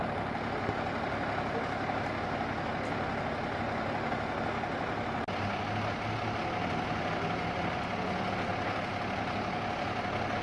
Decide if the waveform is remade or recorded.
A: recorded